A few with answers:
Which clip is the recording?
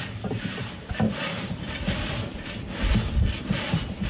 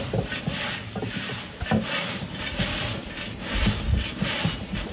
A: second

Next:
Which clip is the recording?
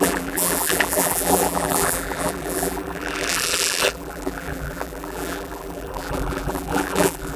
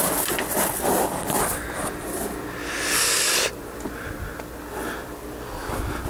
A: second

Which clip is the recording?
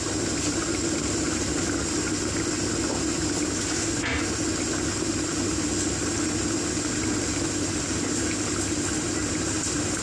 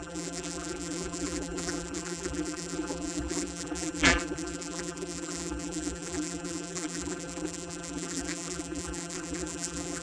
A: first